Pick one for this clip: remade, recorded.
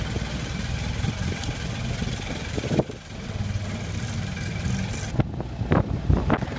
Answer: recorded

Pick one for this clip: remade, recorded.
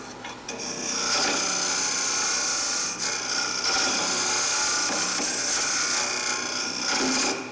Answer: recorded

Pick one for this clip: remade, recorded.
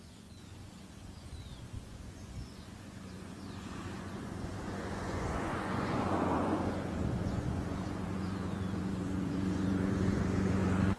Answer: remade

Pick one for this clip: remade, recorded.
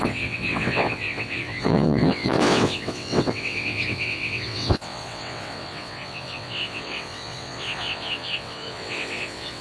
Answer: remade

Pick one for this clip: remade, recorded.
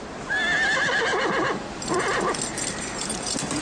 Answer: recorded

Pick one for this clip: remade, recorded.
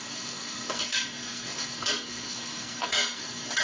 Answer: remade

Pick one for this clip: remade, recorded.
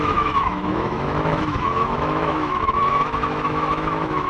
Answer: remade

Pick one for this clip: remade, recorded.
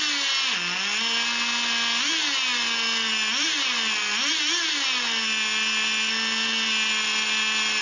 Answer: recorded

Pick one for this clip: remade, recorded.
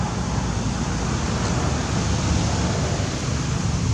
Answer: recorded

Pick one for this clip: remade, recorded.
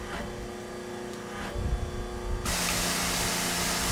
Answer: recorded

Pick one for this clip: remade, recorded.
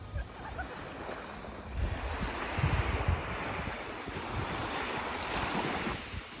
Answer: recorded